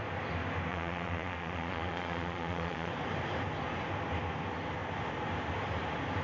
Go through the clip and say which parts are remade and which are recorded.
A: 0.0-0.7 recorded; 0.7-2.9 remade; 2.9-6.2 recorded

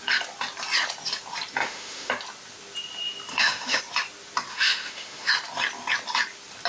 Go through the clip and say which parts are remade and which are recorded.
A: 0.0-1.6 recorded; 1.6-2.1 remade; 2.1-3.3 recorded; 3.3-3.8 remade; 3.8-4.5 recorded; 4.5-5.3 remade; 5.3-6.7 recorded